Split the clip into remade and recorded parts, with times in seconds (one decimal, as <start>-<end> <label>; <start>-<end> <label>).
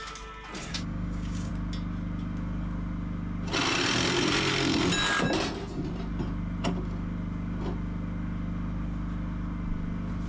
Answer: 0.0-0.7 recorded; 0.7-1.5 remade; 1.5-10.3 recorded